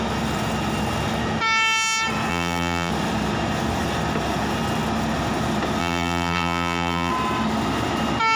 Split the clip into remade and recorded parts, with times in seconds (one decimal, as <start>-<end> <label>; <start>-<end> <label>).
0.0-2.3 recorded; 2.3-2.9 remade; 2.9-5.8 recorded; 5.8-7.1 remade; 7.1-8.4 recorded

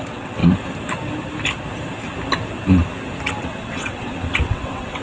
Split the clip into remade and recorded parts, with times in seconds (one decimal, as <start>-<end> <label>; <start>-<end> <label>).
0.0-0.4 remade; 0.4-3.4 recorded; 3.4-5.0 remade

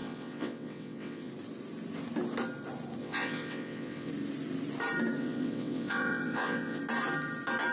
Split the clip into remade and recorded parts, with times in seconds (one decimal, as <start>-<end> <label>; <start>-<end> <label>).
0.0-1.3 remade; 1.3-3.0 recorded; 3.0-4.1 remade; 4.1-5.2 recorded; 5.2-6.8 remade; 6.8-7.7 recorded

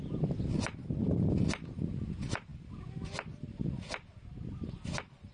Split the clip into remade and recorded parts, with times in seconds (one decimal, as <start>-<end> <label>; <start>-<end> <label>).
0.0-5.3 recorded

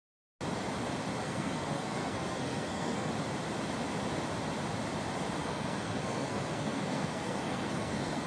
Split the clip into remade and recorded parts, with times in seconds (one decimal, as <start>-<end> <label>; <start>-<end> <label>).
0.0-1.2 recorded; 1.2-3.1 remade; 3.1-5.4 recorded; 5.4-8.3 remade